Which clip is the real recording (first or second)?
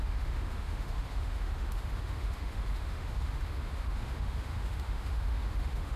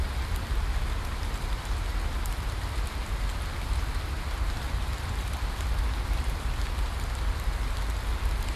second